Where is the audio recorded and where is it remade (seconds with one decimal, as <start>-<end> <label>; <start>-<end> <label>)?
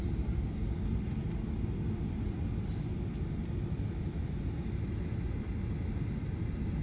0.0-6.8 recorded